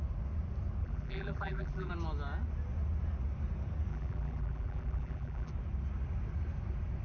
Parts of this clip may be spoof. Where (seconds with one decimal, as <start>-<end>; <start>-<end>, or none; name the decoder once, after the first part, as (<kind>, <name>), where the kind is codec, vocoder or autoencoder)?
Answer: 0.8-1.9 (vocoder, BigVGAN v2); 3.9-5.5